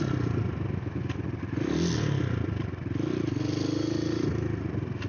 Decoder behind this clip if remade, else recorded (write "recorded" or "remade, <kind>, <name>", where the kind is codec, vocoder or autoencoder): recorded